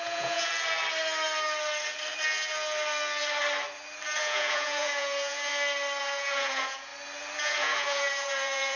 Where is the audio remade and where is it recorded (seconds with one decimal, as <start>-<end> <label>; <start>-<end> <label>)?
0.0-0.5 remade; 0.5-4.2 recorded; 4.2-5.5 remade; 5.5-6.0 recorded; 6.0-6.9 remade; 6.9-7.4 recorded; 7.4-8.8 remade